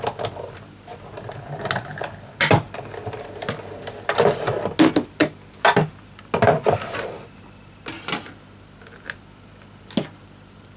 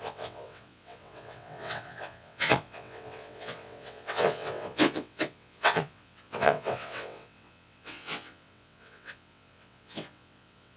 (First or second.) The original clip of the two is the first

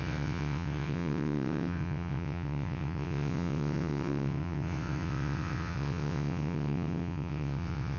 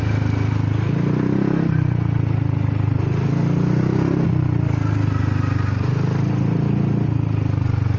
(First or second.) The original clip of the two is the second